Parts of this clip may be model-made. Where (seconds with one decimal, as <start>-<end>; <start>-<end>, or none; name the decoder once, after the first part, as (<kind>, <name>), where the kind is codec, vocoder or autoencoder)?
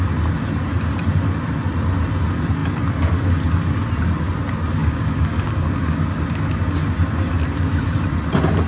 4.8-6.0 (codec, DAC)